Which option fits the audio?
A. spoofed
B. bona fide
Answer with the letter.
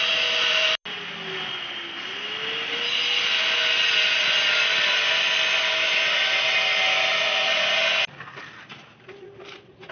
B